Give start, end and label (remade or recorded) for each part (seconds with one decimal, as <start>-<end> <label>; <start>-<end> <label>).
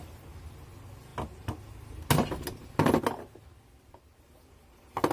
0.0-5.1 recorded